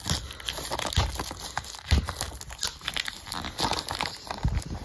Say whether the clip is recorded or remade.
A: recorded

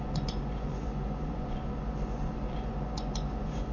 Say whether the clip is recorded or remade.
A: remade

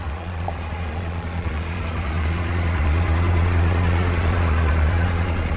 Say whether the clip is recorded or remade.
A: remade